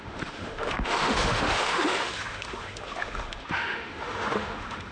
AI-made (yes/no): yes